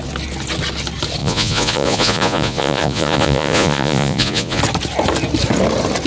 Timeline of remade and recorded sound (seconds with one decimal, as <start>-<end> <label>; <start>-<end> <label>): 0.0-1.2 recorded; 1.2-4.6 remade; 4.6-6.1 recorded